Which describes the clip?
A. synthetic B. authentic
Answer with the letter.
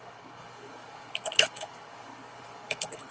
A